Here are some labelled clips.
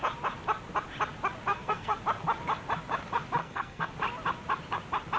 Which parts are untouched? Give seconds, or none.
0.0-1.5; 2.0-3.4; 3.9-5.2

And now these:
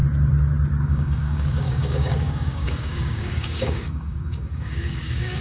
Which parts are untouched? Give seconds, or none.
0.0-0.8

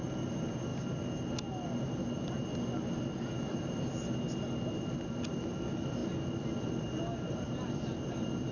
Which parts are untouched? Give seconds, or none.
0.0-8.5

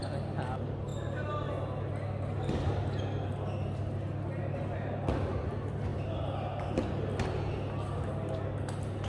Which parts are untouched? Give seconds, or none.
0.0-9.1

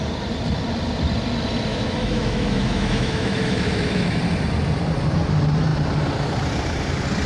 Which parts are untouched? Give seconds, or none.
0.0-1.7; 4.2-7.3